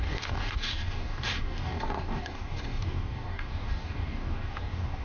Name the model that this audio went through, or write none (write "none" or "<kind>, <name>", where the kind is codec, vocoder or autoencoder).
codec, DAC